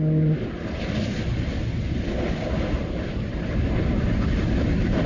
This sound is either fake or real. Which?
real